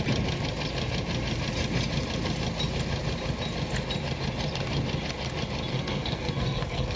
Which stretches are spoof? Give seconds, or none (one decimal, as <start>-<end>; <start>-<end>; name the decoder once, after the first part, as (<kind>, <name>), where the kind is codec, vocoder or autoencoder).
5.7-7.0 (codec, SNAC)